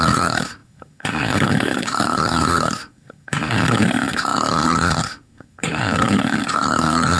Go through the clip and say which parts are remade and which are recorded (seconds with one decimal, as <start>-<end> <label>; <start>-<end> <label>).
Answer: 0.0-7.2 remade